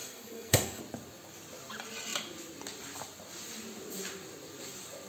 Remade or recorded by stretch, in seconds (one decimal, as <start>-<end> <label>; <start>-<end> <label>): 0.0-0.8 remade; 0.8-5.1 recorded